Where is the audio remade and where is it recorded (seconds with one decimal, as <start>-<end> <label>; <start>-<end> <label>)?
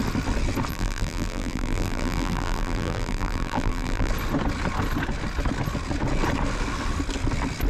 0.0-0.7 recorded; 0.7-4.1 remade; 4.1-7.7 recorded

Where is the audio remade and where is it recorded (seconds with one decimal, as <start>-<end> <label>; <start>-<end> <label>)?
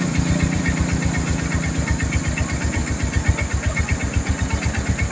0.0-2.8 remade; 2.8-4.5 recorded; 4.5-5.1 remade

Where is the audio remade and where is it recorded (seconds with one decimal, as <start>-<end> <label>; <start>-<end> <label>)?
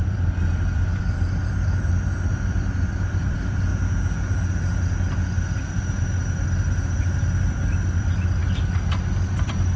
0.0-3.7 remade; 3.7-7.0 recorded; 7.0-8.4 remade; 8.4-9.3 recorded; 9.3-9.8 remade